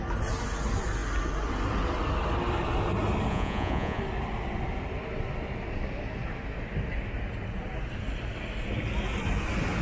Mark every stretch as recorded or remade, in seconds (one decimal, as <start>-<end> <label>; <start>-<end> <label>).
0.0-3.3 recorded; 3.3-4.0 remade; 4.0-9.8 recorded

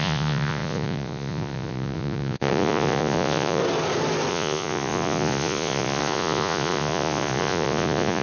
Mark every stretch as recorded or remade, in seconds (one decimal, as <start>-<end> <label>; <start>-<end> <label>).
0.0-3.6 remade; 3.6-4.3 recorded; 4.3-8.2 remade

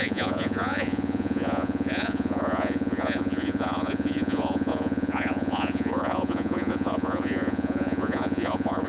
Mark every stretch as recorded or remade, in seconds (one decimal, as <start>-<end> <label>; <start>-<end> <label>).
0.0-8.9 remade